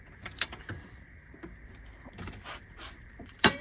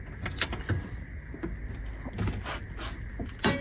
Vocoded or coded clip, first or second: first